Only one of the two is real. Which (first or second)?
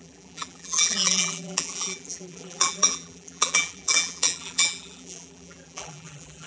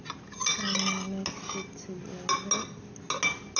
second